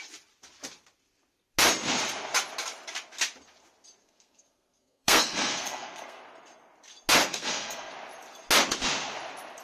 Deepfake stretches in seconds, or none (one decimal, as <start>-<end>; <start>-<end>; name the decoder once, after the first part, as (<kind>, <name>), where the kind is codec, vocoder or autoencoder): 4.0-6.2 (codec, SNAC); 7.2-7.9